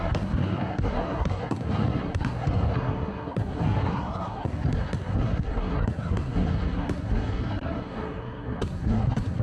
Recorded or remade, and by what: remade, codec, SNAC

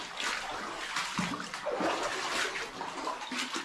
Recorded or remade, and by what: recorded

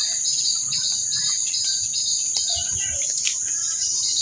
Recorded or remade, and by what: recorded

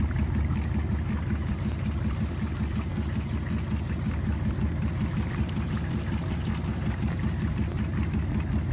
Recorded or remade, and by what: recorded